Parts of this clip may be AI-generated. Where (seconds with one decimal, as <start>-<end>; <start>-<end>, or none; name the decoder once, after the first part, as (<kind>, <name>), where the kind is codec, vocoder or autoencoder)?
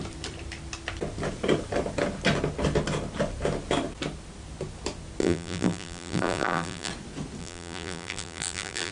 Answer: 5.2-6.9 (vocoder, BigVGAN v2); 7.4-8.9